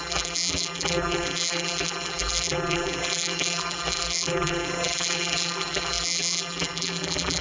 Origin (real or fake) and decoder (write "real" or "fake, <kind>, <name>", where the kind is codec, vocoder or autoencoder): fake, vocoder, BigVGAN v2